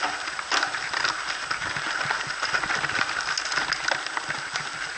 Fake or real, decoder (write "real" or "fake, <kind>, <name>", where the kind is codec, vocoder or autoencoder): real